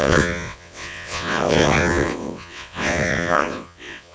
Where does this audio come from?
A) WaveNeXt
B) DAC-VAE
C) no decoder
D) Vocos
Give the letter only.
A